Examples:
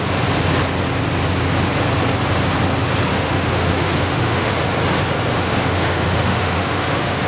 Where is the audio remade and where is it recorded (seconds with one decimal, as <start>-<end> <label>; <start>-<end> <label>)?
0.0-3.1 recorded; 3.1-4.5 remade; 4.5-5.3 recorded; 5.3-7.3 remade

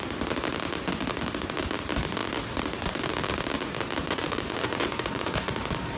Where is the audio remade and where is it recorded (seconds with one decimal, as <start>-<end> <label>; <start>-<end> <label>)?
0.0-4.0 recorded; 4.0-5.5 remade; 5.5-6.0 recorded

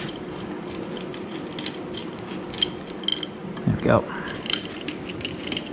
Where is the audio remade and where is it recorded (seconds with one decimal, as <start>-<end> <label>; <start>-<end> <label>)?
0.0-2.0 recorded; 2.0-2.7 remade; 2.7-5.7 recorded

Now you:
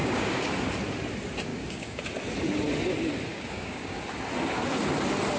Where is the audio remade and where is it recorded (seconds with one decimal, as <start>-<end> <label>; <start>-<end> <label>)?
0.0-0.5 remade; 0.5-1.5 recorded; 1.5-2.0 remade; 2.0-3.3 recorded; 3.3-4.0 remade; 4.0-5.4 recorded

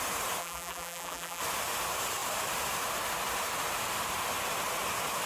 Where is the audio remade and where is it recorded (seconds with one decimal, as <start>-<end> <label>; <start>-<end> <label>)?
0.0-0.4 recorded; 0.4-1.4 remade; 1.4-5.3 recorded